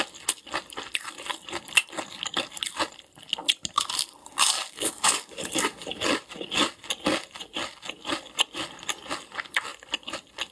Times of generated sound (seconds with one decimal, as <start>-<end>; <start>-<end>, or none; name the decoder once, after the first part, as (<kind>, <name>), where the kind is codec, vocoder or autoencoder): 4.2-6.0 (codec, DAC)

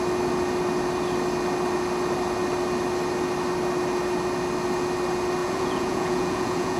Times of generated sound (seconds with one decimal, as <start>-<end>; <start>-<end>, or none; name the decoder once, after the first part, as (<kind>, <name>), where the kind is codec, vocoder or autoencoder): 5.4-6.8 (vocoder, Vocos)

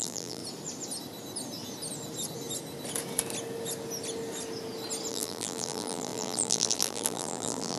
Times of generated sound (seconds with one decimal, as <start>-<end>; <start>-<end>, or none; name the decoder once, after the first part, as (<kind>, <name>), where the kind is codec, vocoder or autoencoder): 0.0-0.4 (vocoder, BigVGAN v2); 5.1-7.8

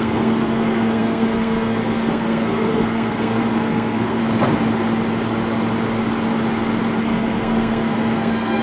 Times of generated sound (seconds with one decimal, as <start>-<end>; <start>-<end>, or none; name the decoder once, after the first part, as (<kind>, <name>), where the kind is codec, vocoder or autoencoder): 0.0-4.2 (codec, SNAC); 7.0-8.6